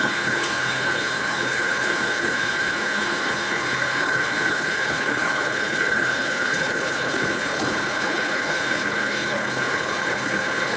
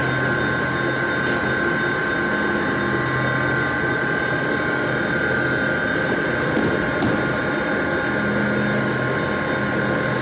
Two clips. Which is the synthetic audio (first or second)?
first